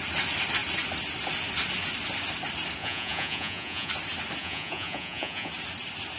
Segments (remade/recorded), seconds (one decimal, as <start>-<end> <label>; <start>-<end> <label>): 0.0-2.8 recorded; 2.8-3.9 remade; 3.9-4.4 recorded; 4.4-5.5 remade; 5.5-6.2 recorded